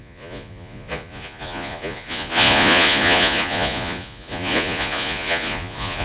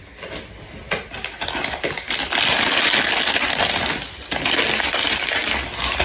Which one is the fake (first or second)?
first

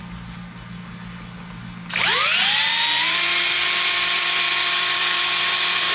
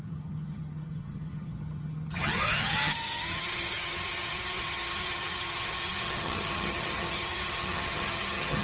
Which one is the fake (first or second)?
second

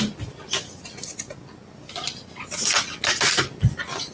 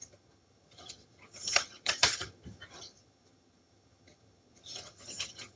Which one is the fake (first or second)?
second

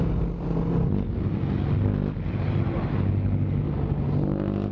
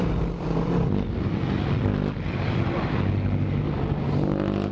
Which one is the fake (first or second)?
second